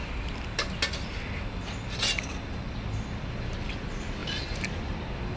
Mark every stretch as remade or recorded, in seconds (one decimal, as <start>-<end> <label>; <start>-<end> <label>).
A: 0.0-5.4 recorded